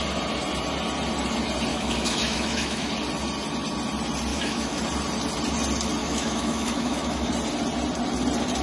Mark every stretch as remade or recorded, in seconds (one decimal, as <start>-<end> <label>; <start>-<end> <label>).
0.0-1.7 recorded; 1.7-2.9 remade; 2.9-4.3 recorded; 4.3-4.8 remade; 4.8-6.0 recorded; 6.0-7.3 remade; 7.3-8.6 recorded